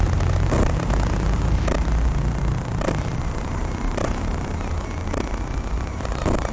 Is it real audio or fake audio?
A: fake